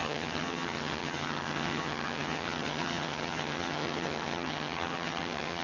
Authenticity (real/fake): fake